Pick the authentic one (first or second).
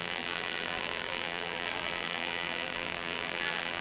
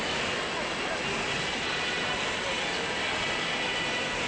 second